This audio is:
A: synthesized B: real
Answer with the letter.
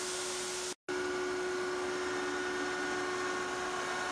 B